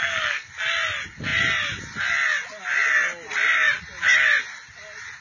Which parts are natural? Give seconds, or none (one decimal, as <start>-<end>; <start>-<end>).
0.5-5.2